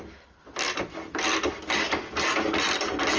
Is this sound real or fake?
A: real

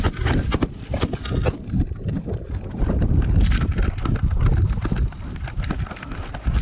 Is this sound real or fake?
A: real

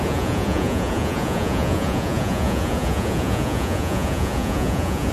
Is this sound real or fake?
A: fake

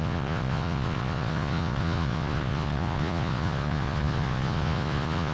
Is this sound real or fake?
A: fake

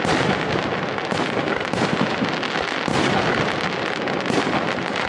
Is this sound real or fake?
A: real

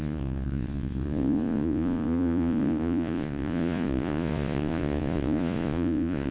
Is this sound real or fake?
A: fake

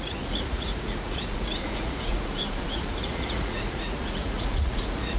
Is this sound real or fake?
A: fake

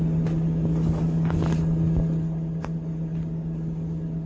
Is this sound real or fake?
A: real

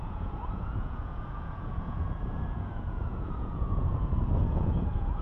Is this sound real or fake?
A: fake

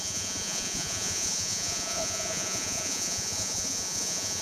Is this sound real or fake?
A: fake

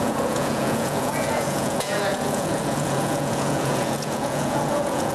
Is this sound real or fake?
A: fake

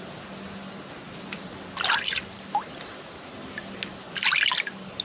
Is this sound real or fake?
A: real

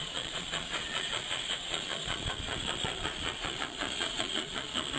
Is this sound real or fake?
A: fake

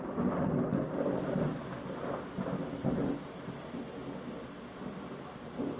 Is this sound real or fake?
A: real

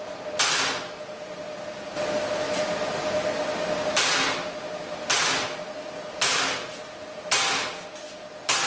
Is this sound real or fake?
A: real